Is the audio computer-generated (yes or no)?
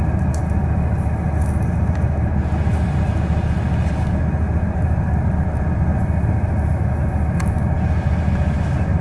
no